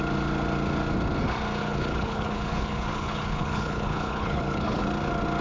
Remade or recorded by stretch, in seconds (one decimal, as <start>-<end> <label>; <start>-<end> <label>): 0.0-1.6 recorded; 1.6-4.8 remade; 4.8-5.4 recorded